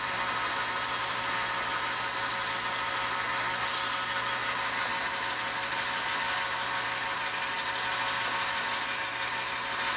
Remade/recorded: recorded